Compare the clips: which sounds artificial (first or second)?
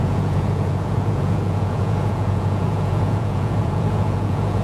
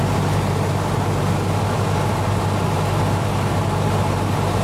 first